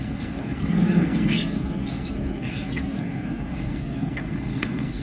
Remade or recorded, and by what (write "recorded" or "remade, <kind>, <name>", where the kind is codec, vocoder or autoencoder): remade, codec, SNAC